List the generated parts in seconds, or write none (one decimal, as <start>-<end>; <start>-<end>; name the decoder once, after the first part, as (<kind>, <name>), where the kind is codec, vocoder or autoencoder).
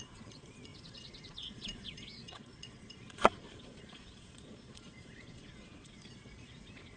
0.0-7.0 (vocoder, Vocos)